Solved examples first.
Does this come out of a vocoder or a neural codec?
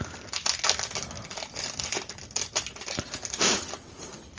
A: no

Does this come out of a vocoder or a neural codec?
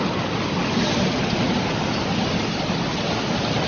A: no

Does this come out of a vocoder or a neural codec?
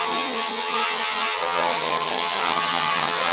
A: yes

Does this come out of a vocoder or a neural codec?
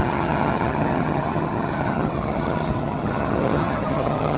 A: yes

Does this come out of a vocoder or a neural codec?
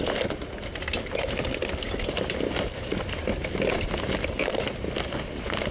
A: no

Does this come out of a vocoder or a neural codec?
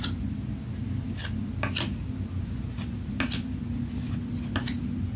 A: no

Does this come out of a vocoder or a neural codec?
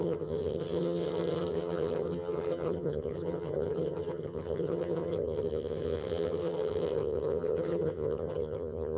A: yes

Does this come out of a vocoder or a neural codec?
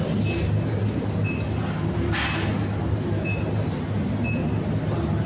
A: no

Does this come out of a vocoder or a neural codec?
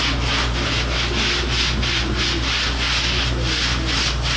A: no